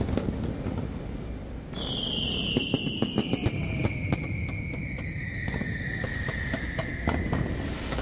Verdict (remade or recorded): recorded